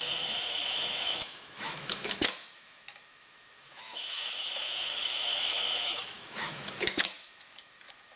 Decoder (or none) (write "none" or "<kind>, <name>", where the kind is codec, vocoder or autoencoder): autoencoder, DAC-VAE